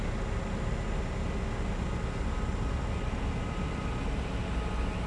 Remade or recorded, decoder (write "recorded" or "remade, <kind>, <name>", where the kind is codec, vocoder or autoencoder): recorded